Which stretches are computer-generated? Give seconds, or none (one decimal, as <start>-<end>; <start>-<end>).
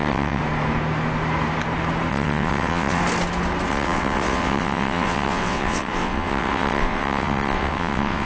0.0-0.4; 2.1-3.0; 3.7-8.3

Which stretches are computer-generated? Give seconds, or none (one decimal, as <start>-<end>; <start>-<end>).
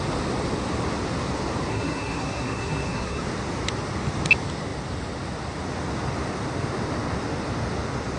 1.7-3.2